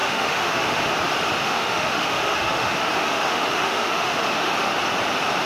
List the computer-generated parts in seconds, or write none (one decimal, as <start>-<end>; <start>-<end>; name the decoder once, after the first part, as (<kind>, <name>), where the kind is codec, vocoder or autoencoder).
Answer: 0.0-0.8 (autoencoder, DAC-VAE); 1.4-4.7